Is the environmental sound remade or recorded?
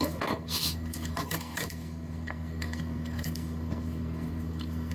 remade